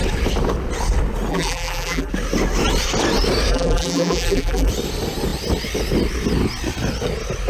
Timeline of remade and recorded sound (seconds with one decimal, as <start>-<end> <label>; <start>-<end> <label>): 0.0-1.3 recorded; 1.3-2.1 remade; 2.1-3.5 recorded; 3.5-4.7 remade; 4.7-7.5 recorded